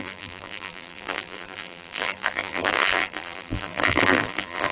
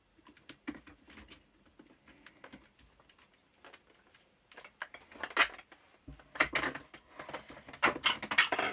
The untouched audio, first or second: second